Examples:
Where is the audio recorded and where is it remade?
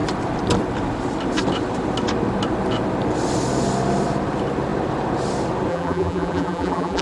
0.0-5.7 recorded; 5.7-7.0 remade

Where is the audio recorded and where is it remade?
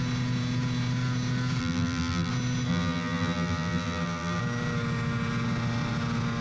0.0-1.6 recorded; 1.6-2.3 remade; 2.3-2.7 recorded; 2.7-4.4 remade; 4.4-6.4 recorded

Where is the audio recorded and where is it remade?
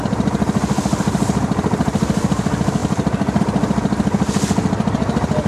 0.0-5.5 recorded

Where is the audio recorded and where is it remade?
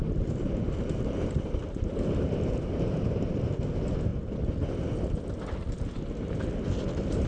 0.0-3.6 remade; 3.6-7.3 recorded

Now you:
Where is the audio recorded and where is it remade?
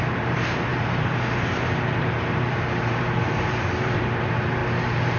0.0-4.6 remade; 4.6-5.2 recorded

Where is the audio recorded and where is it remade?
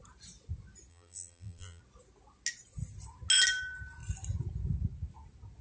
0.0-0.9 recorded; 0.9-1.8 remade; 1.8-5.6 recorded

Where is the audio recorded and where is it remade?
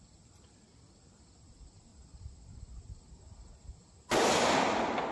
0.0-1.9 remade; 1.9-5.1 recorded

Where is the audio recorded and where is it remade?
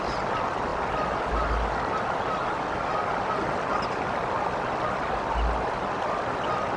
0.0-6.8 recorded